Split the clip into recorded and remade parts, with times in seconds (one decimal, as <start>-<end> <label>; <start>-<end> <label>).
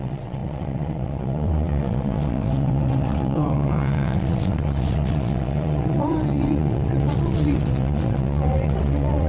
0.0-9.3 remade